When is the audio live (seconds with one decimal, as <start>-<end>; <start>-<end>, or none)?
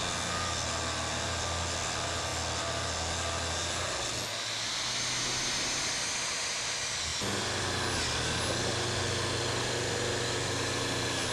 0.0-11.3